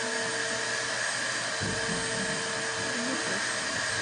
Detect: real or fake real